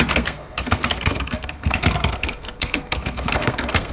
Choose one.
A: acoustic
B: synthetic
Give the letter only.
B